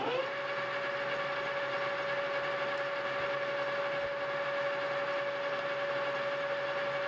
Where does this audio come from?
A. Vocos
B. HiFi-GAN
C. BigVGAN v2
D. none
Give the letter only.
D